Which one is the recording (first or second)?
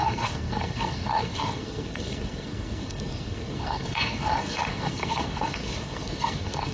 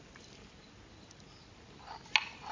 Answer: second